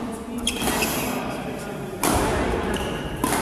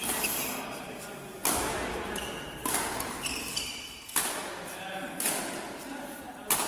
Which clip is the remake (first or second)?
first